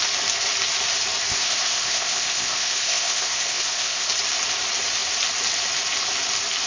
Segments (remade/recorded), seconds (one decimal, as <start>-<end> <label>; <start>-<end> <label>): 0.0-1.3 recorded; 1.3-4.1 remade; 4.1-6.7 recorded

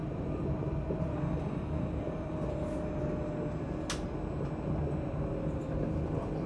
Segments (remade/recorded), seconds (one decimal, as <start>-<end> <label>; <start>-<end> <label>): 0.0-2.5 remade; 2.5-6.5 recorded

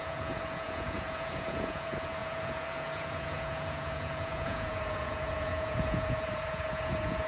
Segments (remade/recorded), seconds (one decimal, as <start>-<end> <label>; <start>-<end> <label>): 0.0-7.3 remade

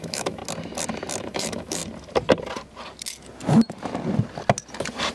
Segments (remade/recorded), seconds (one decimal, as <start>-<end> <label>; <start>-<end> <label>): 0.0-0.4 remade; 0.4-1.3 recorded; 1.3-1.8 remade; 1.8-5.1 recorded

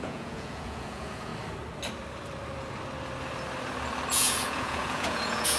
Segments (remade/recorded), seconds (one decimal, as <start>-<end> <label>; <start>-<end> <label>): 0.0-1.3 remade; 1.3-4.1 recorded; 4.1-5.6 remade